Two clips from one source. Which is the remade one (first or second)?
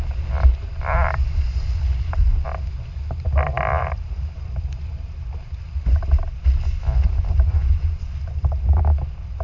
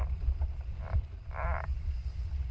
second